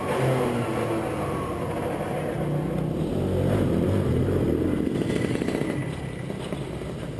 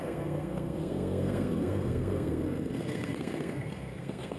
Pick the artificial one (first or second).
second